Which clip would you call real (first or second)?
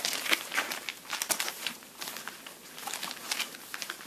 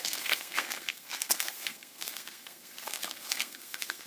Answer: first